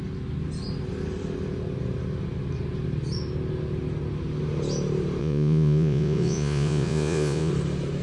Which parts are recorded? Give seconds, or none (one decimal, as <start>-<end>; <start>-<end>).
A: 0.0-5.2; 7.5-8.0